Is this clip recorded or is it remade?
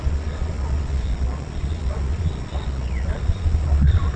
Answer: remade